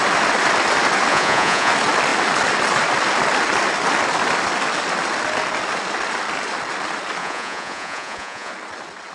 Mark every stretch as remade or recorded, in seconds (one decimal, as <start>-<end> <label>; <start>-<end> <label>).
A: 0.0-1.1 recorded; 1.1-1.7 remade; 1.7-7.2 recorded; 7.2-8.5 remade; 8.5-9.1 recorded